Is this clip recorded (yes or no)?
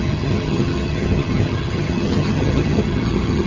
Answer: no